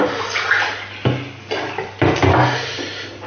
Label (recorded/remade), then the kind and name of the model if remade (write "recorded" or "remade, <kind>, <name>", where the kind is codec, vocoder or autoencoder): recorded